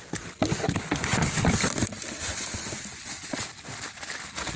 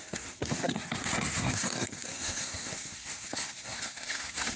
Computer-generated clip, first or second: second